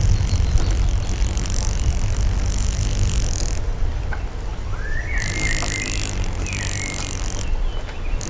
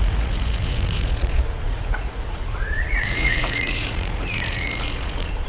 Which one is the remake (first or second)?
second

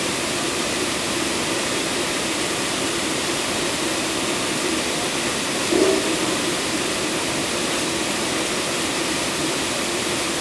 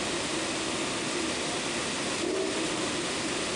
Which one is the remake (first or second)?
first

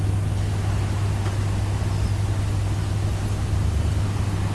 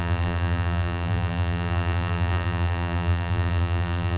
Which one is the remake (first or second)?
second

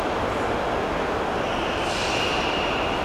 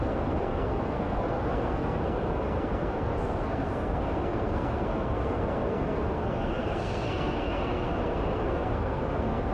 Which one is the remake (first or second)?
second